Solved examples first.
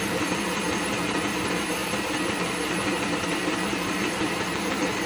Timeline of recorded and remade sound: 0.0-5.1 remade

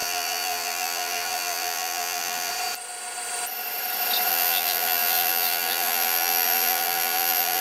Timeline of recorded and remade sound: 0.0-2.5 remade; 2.5-4.3 recorded; 4.3-7.6 remade

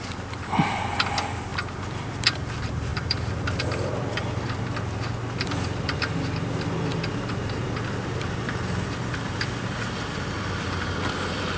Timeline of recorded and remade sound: 0.0-11.6 remade